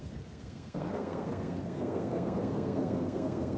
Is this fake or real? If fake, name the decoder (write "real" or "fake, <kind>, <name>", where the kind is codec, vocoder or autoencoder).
fake, codec, SNAC